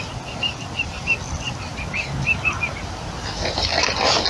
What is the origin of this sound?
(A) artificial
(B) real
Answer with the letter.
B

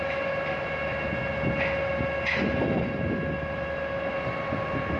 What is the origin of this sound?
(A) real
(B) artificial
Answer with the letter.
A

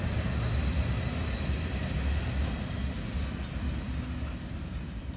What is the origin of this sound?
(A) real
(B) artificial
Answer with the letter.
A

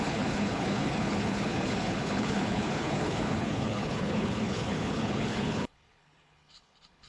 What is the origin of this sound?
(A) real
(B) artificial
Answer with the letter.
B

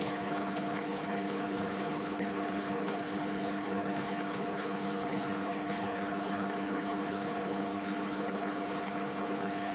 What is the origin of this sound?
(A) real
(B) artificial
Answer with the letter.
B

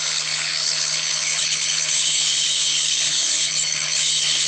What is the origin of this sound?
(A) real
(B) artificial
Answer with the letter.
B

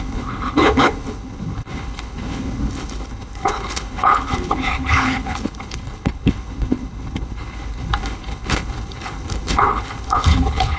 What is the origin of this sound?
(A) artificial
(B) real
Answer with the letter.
A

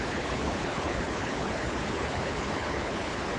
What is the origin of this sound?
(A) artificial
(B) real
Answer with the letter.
A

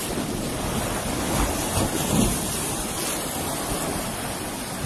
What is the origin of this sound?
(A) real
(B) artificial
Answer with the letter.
A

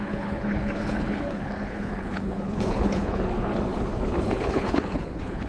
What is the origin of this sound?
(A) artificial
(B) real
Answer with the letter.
A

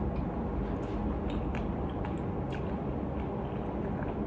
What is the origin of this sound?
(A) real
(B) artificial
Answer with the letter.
A